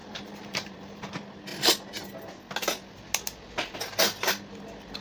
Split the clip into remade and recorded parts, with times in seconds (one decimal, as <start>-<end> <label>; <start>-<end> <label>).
0.0-1.1 remade; 1.1-5.0 recorded